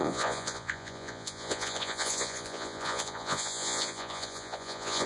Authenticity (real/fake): fake